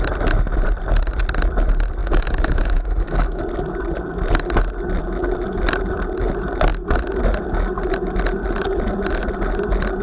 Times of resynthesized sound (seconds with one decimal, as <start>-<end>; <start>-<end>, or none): 2.0-3.4